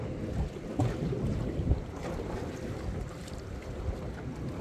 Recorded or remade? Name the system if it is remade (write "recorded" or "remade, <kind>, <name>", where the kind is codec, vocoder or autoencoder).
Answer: recorded